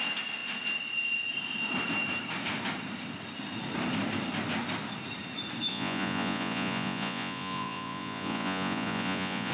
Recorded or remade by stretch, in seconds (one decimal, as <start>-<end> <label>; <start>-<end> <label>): 0.0-5.7 recorded; 5.7-9.5 remade